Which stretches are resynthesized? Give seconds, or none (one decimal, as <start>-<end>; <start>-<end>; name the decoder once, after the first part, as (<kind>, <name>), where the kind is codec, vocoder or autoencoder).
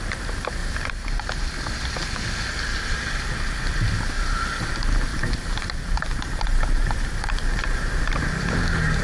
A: 0.6-1.2 (vocoder, BigVGAN v2); 2.7-3.7; 5.1-8.5